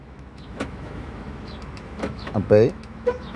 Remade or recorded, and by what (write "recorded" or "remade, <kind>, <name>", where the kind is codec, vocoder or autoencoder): remade, autoencoder, DAC-VAE